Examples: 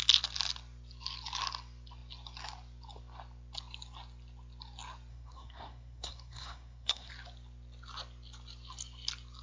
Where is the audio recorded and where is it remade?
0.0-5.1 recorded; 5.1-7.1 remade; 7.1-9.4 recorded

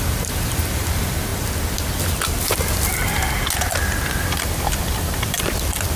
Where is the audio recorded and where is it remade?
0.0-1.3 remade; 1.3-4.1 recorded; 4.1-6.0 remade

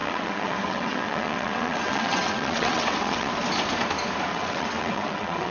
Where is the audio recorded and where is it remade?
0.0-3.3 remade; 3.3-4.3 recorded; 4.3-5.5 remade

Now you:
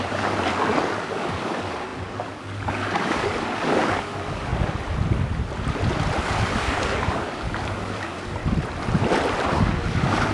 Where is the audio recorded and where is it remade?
0.0-4.5 remade; 4.5-6.2 recorded; 6.2-8.4 remade; 8.4-9.5 recorded; 9.5-10.3 remade

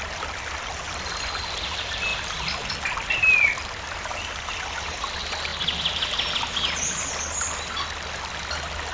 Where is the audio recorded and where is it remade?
0.0-8.9 recorded